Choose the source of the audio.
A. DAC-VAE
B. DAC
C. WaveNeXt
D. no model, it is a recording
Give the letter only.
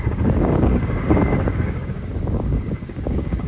B